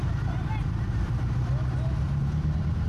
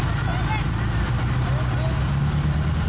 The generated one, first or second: first